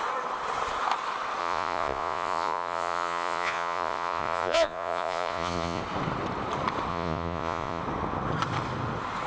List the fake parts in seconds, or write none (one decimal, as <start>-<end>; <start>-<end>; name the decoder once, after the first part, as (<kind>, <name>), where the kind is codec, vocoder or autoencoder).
1.4-5.8 (vocoder, Vocos); 6.9-7.8